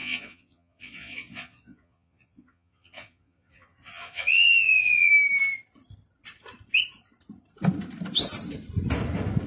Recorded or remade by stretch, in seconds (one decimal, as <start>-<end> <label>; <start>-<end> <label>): 0.0-5.1 remade; 5.1-9.5 recorded